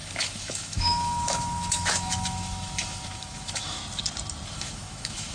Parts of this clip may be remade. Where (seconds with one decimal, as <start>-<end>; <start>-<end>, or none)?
0.0-3.8; 4.5-5.3